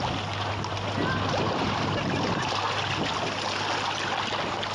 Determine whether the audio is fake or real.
real